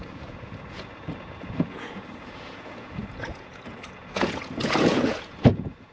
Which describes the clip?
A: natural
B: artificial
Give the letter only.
B